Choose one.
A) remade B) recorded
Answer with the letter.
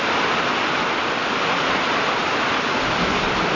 B